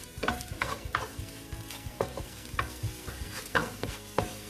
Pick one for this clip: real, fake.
fake